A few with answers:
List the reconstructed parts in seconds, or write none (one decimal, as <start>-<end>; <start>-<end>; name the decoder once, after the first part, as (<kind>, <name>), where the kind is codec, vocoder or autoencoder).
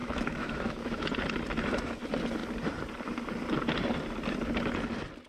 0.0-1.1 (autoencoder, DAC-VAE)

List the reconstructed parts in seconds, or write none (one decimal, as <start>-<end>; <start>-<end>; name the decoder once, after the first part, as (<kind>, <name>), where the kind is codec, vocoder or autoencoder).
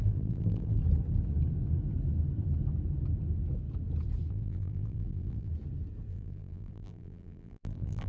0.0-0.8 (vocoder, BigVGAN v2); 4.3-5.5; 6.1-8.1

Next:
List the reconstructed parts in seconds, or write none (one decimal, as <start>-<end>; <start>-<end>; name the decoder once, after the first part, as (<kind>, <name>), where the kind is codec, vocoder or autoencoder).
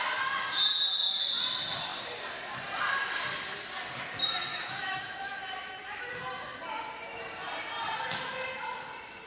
4.5-6.1 (autoencoder, DAC-VAE)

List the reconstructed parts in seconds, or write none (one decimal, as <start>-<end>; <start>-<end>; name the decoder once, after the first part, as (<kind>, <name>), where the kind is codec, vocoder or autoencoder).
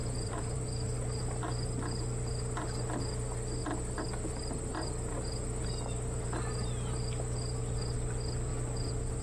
0.0-1.2 (vocoder, BigVGAN v2)